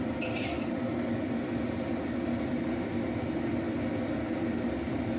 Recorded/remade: recorded